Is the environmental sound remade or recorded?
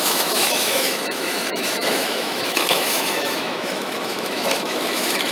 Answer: remade